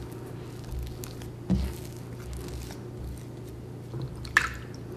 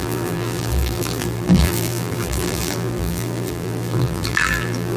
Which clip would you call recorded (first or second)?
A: first